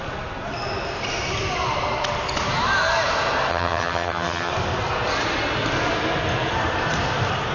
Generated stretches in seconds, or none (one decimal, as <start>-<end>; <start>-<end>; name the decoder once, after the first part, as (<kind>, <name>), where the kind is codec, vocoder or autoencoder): 3.5-4.5 (vocoder, HiFi-GAN)